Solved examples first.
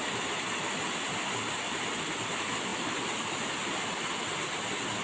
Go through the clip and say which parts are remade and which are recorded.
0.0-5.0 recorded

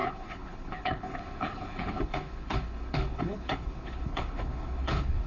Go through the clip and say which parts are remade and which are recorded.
0.0-5.3 remade

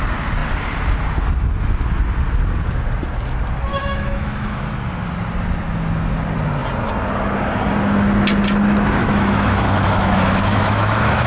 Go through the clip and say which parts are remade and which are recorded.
0.0-3.7 recorded; 3.7-4.6 remade; 4.6-9.0 recorded; 9.0-11.3 remade

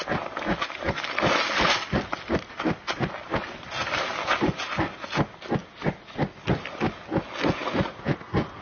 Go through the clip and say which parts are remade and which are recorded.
0.0-8.6 recorded

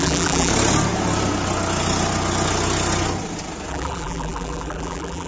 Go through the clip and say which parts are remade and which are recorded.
0.0-0.5 remade; 0.5-3.7 recorded; 3.7-5.3 remade